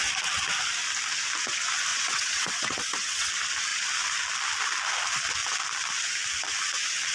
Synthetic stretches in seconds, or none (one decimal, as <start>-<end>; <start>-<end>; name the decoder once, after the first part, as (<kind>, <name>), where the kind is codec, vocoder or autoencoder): 1.9-3.3 (vocoder, WaveNeXt)